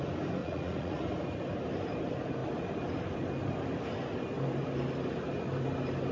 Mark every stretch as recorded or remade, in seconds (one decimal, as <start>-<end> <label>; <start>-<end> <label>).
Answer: 0.0-0.4 recorded; 0.4-1.0 remade; 1.0-6.1 recorded